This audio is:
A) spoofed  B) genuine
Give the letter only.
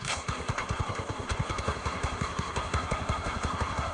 A